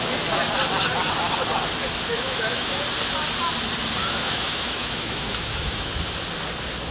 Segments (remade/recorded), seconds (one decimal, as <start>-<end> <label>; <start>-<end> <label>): 0.0-2.1 recorded; 2.1-2.8 remade; 2.8-4.0 recorded; 4.0-5.9 remade; 5.9-6.9 recorded